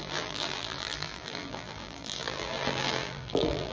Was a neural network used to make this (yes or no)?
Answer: yes